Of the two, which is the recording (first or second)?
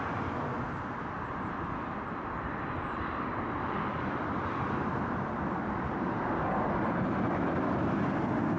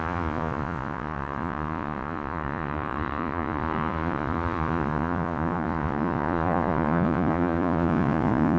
first